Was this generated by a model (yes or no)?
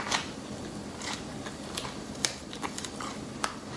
no